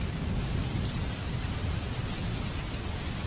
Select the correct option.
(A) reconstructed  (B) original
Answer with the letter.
B